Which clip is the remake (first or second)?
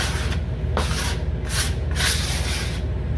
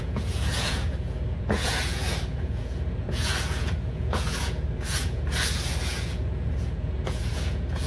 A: second